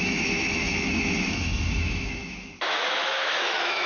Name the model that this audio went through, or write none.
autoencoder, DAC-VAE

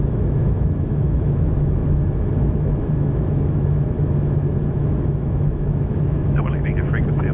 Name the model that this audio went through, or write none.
autoencoder, DAC-VAE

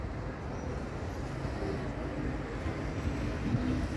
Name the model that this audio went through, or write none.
none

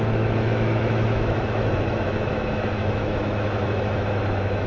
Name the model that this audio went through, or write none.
autoencoder, DAC-VAE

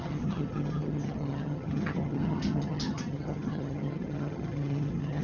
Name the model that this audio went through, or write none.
vocoder, HiFi-GAN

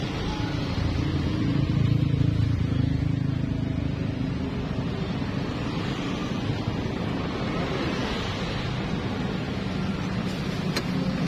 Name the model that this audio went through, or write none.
none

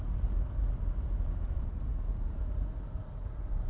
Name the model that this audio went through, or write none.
none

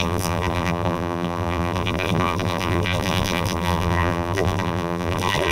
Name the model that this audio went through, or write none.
vocoder, BigVGAN v2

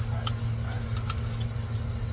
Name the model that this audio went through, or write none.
none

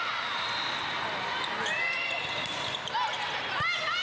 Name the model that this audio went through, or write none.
none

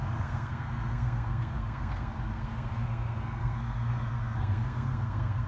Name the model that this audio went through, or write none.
codec, SNAC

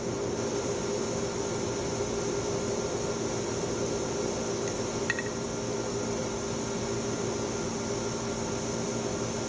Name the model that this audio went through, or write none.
none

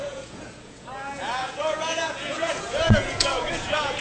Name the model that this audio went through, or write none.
vocoder, Vocos